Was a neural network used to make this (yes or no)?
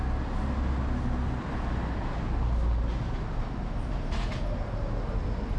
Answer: no